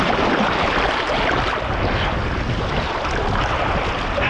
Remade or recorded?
recorded